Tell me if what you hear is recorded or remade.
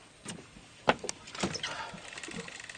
recorded